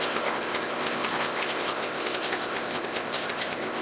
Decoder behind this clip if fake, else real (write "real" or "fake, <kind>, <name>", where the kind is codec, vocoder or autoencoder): fake, codec, ZipCodec